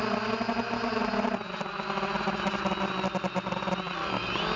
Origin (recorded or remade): recorded